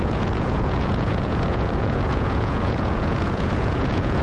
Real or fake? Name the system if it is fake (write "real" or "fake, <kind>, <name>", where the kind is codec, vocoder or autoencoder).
fake, vocoder, Vocos